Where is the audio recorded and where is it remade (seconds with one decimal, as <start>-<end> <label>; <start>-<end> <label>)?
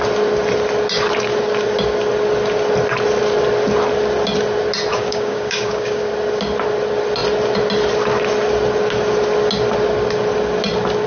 0.0-4.9 recorded; 4.9-6.1 remade; 6.1-11.1 recorded